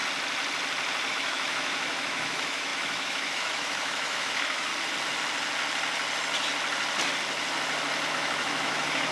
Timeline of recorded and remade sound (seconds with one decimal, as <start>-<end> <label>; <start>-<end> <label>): 0.0-1.1 recorded; 1.1-4.7 remade; 4.7-8.1 recorded; 8.1-9.1 remade